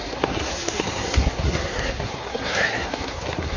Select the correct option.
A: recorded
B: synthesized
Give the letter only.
B